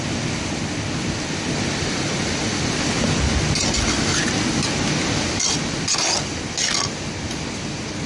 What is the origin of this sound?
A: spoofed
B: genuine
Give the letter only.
B